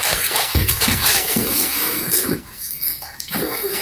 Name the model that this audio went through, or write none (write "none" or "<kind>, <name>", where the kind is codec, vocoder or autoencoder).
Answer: codec, SNAC